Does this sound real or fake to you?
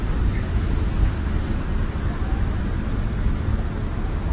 real